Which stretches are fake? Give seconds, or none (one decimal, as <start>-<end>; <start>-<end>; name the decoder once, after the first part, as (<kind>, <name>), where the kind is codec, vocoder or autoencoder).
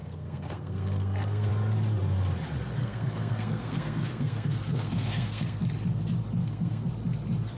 0.0-1.5 (codec, SNAC); 2.8-5.6; 6.4-6.9